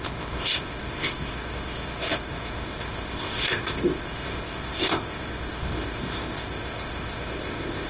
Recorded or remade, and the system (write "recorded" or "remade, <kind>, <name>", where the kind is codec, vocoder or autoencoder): remade, codec, ZipCodec